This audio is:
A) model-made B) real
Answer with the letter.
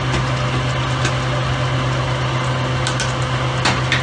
B